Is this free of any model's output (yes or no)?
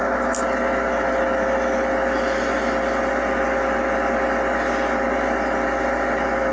yes